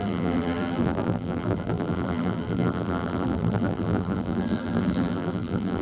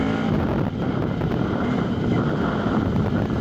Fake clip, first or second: first